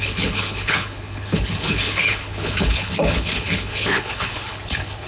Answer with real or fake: fake